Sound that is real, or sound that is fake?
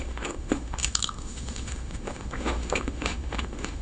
fake